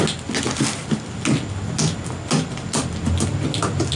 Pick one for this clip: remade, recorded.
recorded